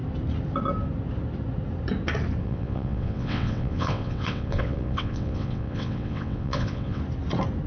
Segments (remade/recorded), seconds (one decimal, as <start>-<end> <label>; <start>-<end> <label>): 0.0-2.4 recorded; 2.4-7.0 remade; 7.0-7.7 recorded